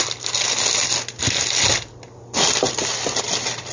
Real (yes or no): yes